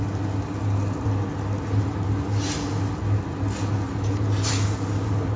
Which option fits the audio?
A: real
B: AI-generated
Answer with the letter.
A